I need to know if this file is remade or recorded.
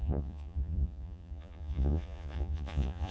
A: remade